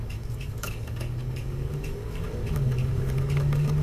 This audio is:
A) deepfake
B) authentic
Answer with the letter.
A